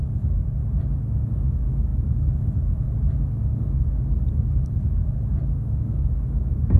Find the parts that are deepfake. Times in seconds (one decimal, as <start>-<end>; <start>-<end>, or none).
0.0-0.6; 1.5-6.8